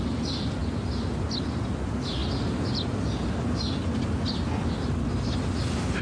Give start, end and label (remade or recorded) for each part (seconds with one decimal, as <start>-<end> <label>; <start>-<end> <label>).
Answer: 0.0-0.6 remade; 0.6-1.7 recorded; 1.7-2.2 remade; 2.2-6.0 recorded

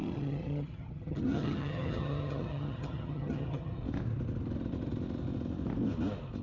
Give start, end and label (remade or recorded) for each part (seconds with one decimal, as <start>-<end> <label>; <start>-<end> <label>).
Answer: 0.0-3.8 remade; 3.8-6.4 recorded

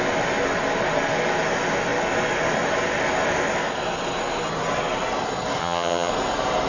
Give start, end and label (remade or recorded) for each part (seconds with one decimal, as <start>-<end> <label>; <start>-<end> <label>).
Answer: 0.0-5.6 recorded; 5.6-6.1 remade; 6.1-6.7 recorded

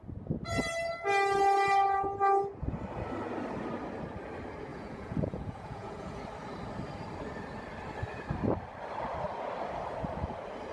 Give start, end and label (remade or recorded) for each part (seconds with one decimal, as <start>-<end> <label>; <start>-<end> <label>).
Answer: 0.0-4.7 recorded; 4.7-6.2 remade; 6.2-10.7 recorded

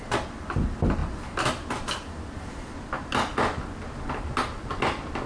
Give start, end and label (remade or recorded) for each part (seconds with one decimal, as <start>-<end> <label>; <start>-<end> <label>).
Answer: 0.0-5.3 recorded